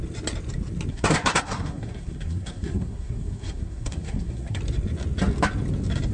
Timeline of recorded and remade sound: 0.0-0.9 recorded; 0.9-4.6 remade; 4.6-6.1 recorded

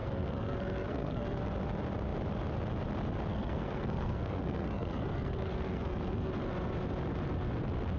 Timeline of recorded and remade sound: 0.0-1.4 remade; 1.4-3.3 recorded; 3.3-6.3 remade; 6.3-8.0 recorded

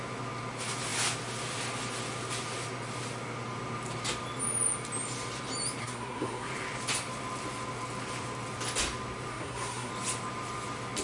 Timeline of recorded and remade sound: 0.0-5.8 recorded; 5.8-6.5 remade; 6.5-9.3 recorded; 9.3-9.9 remade; 9.9-11.0 recorded

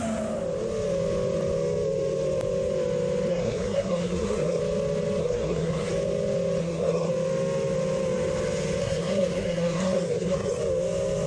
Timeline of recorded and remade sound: 0.0-3.3 recorded; 3.3-4.6 remade; 4.6-5.2 recorded; 5.2-5.9 remade; 5.9-6.6 recorded; 6.6-7.1 remade; 7.1-8.8 recorded; 8.8-10.6 remade; 10.6-11.3 recorded

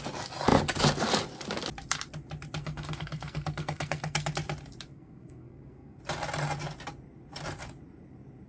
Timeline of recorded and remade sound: 0.0-2.6 recorded; 2.6-4.3 remade; 4.3-4.9 recorded; 4.9-6.0 remade; 6.0-8.5 recorded

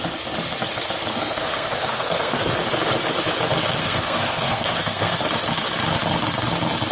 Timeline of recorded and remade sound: 0.0-1.1 recorded; 1.1-2.5 remade; 2.5-3.8 recorded; 3.8-5.2 remade; 5.2-6.9 recorded